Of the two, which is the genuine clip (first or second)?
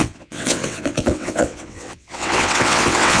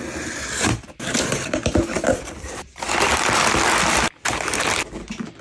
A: second